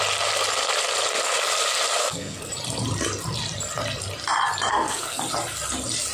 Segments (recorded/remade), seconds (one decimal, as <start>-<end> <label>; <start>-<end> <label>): 0.0-2.0 recorded; 2.0-2.5 remade; 2.5-4.7 recorded; 4.7-5.2 remade; 5.2-6.1 recorded